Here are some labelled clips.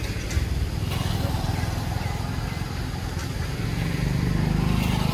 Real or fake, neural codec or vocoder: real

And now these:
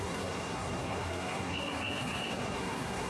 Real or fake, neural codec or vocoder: fake, codec, SNAC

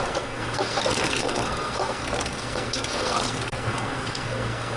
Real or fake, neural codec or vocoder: fake, codec, SNAC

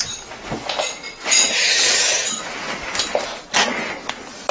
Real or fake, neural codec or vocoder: real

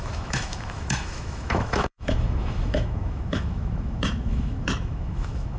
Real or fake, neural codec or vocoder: fake, autoencoder, DAC-VAE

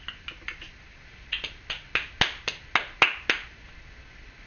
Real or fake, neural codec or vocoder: real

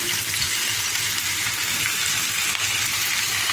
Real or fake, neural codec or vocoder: real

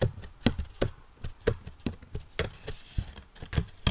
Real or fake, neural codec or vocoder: real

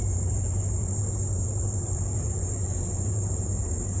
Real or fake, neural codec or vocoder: fake, vocoder, BigVGAN v2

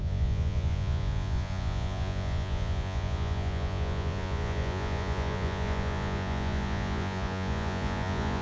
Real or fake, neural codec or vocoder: fake, vocoder, Vocos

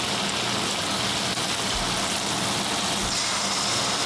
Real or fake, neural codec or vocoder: real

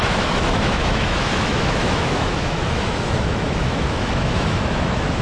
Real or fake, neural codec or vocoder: fake, autoencoder, DAC-VAE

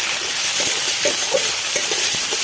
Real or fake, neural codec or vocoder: real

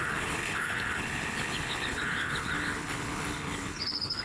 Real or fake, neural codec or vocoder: fake, codec, HILCodec